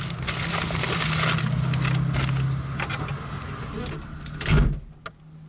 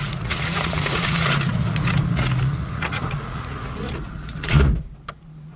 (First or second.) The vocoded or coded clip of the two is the second